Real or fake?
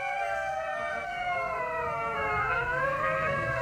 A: fake